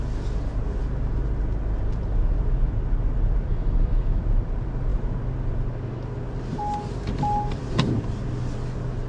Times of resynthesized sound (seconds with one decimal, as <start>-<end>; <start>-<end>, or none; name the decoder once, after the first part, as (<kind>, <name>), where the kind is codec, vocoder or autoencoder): 3.5-4.2 (autoencoder, DAC-VAE)